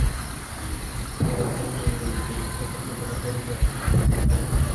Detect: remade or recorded recorded